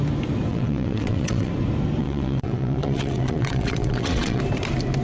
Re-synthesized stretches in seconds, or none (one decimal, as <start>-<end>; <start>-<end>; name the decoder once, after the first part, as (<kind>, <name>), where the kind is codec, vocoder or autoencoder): 0.5-1.5 (vocoder, WaveNeXt); 2.0-4.4